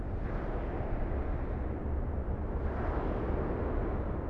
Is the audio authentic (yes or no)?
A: yes